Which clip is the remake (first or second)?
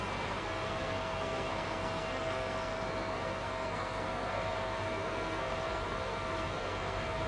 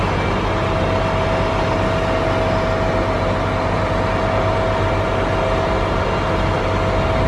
first